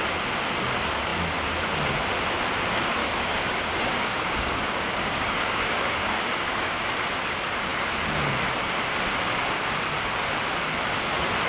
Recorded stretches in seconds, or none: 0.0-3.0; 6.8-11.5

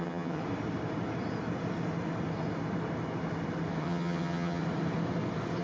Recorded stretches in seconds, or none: 0.4-3.8; 4.6-5.6